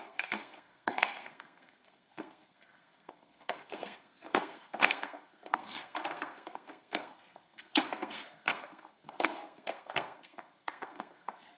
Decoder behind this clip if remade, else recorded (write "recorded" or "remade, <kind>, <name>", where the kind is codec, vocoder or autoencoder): remade, codec, SNAC